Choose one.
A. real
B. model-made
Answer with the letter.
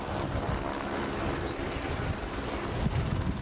A